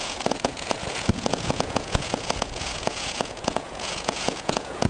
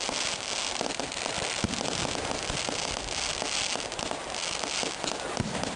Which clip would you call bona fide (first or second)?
second